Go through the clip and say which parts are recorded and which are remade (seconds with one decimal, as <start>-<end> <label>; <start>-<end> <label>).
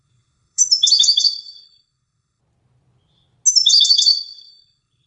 0.0-0.6 remade; 0.6-1.2 recorded; 1.2-2.4 remade; 2.4-3.7 recorded; 3.7-5.1 remade